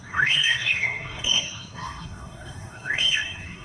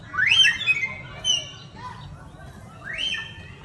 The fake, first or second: first